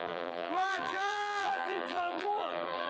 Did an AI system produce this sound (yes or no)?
yes